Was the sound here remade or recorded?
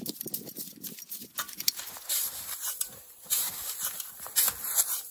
remade